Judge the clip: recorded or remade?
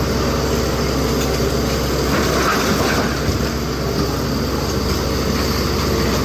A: recorded